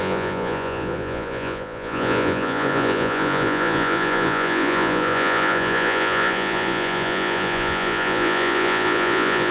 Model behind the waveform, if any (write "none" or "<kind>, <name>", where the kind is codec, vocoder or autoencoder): vocoder, Vocos